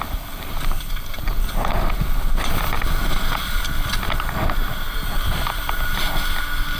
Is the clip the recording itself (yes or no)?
yes